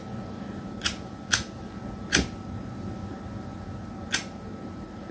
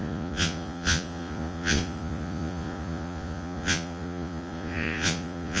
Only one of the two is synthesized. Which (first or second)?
second